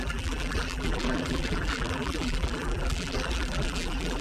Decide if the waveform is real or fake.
fake